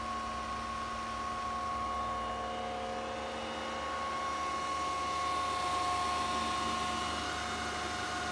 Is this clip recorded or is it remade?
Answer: recorded